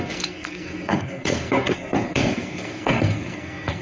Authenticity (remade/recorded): remade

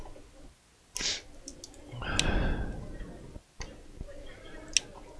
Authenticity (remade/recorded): recorded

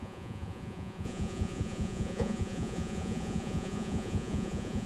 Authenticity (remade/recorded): remade